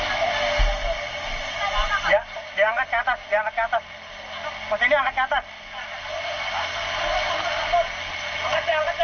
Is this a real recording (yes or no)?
yes